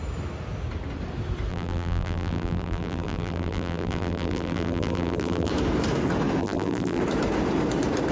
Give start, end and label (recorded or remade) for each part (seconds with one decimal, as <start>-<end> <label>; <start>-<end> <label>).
0.0-1.5 recorded; 1.5-5.5 remade; 5.5-6.4 recorded; 6.4-7.0 remade; 7.0-8.1 recorded